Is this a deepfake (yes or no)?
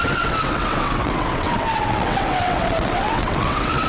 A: yes